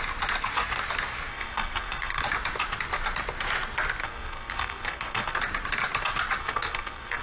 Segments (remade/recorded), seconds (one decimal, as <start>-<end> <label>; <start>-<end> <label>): 0.0-1.3 recorded; 1.3-2.2 remade; 2.2-4.0 recorded; 4.0-5.4 remade; 5.4-6.4 recorded; 6.4-7.2 remade